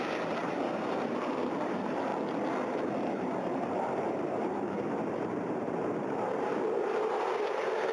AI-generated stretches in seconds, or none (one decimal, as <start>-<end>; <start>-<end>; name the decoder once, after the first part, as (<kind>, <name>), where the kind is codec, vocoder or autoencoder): 0.0-2.1 (vocoder, BigVGAN v2); 2.7-7.9